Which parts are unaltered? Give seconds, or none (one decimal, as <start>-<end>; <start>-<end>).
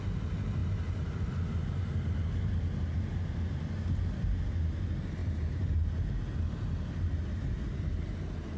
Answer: 0.0-8.6